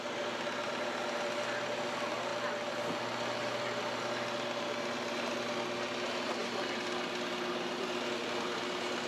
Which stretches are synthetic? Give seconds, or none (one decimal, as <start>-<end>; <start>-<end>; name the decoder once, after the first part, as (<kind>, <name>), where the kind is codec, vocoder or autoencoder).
none